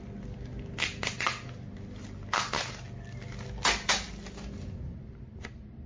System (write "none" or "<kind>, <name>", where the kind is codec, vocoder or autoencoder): none